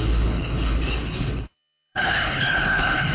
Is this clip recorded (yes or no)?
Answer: no